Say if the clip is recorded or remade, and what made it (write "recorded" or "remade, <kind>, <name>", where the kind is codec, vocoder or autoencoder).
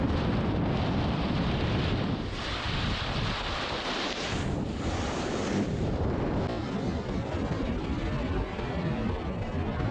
remade, vocoder, BigVGAN v2